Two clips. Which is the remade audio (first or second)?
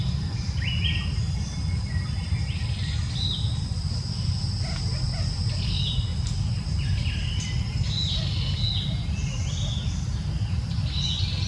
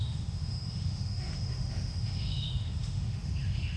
second